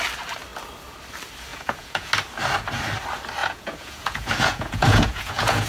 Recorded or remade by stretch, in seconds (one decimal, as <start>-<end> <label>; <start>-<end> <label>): 0.0-1.5 recorded; 1.5-2.1 remade; 2.1-3.4 recorded; 3.4-5.7 remade